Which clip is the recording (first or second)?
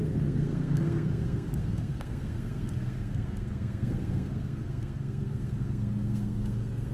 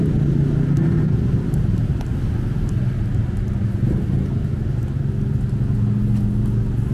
second